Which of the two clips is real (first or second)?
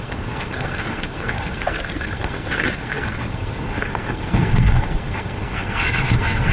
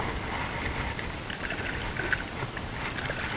second